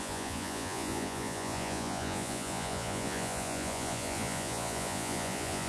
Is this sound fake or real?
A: fake